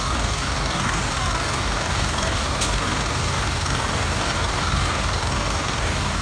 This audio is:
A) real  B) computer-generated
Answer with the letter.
B